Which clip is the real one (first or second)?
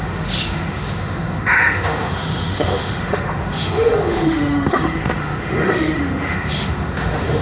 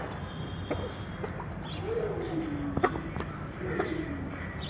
second